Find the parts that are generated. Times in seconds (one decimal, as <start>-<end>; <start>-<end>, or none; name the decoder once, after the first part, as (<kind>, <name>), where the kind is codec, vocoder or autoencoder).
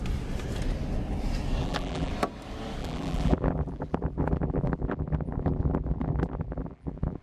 1.6-2.1 (vocoder, BigVGAN v2); 2.8-7.2